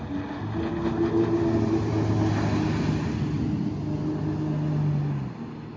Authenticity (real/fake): real